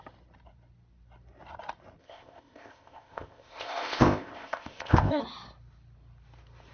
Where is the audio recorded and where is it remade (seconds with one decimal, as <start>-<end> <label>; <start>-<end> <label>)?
0.0-2.0 recorded; 2.0-5.2 remade; 5.2-6.7 recorded